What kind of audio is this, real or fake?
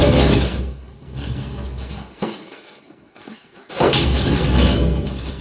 fake